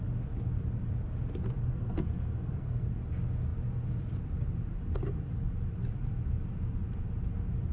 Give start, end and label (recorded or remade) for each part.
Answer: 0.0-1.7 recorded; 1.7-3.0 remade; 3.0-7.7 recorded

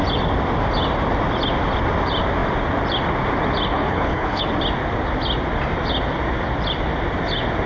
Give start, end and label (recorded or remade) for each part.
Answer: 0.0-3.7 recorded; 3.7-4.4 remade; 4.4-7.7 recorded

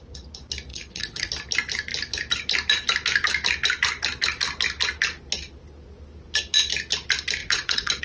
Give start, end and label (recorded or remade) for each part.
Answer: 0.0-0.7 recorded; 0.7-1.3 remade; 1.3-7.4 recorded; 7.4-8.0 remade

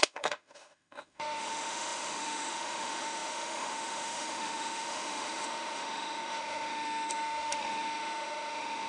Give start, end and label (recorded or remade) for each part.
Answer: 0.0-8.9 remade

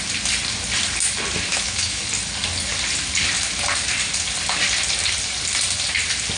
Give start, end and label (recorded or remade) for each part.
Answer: 0.0-1.5 recorded; 1.5-2.0 remade; 2.0-6.4 recorded

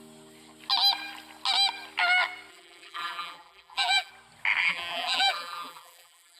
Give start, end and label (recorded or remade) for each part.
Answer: 0.0-2.5 recorded; 2.5-4.1 remade; 4.1-4.6 recorded; 4.6-6.4 remade